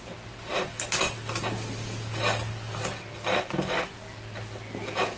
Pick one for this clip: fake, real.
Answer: real